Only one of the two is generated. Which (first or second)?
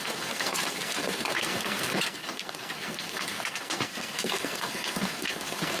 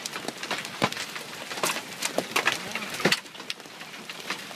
first